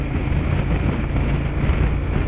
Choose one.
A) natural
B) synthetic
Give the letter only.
A